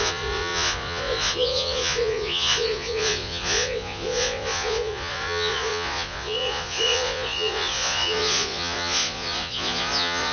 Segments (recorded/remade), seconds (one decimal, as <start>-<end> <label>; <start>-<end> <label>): 0.0-10.3 remade